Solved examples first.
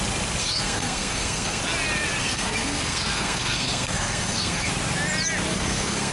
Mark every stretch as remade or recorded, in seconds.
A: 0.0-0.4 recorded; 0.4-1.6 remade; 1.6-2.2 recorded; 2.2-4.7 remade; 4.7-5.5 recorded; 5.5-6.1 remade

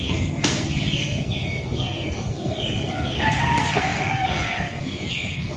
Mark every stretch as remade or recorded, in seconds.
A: 0.0-5.6 remade

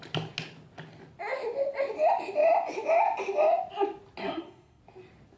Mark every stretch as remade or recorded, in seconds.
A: 0.0-4.2 recorded; 4.2-4.8 remade; 4.8-5.4 recorded